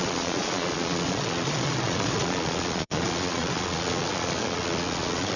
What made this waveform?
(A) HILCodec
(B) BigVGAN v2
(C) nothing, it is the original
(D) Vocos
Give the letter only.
D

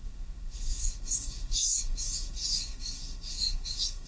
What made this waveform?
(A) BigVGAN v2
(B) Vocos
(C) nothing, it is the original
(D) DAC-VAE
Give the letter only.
D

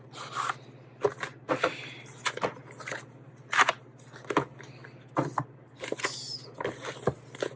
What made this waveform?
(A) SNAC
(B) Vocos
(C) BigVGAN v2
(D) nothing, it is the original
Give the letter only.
D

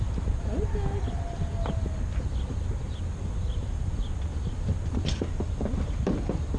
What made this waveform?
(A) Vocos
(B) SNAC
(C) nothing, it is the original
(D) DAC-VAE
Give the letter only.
C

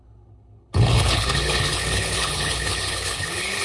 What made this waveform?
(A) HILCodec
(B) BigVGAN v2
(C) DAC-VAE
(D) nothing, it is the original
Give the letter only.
A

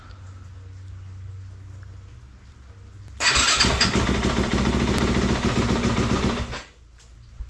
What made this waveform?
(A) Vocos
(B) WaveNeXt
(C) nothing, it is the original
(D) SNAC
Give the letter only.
C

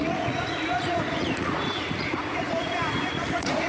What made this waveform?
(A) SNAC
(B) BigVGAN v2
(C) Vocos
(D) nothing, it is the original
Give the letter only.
C